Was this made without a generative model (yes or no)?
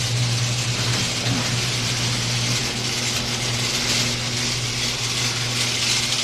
yes